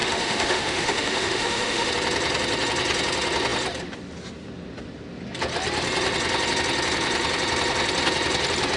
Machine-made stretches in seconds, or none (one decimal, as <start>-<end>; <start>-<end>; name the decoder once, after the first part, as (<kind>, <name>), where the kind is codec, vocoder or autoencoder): 0.0-1.9 (autoencoder, DAC-VAE)